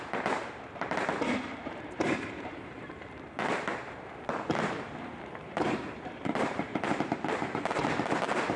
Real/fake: fake